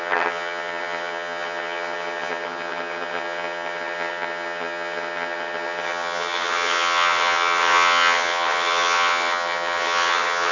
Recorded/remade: remade